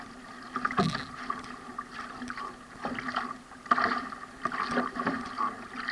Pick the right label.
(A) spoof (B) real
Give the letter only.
B